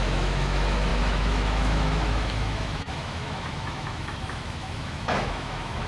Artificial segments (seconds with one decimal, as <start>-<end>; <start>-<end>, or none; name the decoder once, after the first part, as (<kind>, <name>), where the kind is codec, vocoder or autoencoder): 0.0-5.9 (autoencoder, DAC-VAE)